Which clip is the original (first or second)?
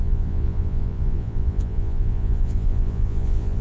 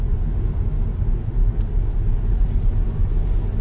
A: second